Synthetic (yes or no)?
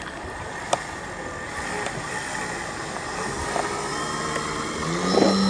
no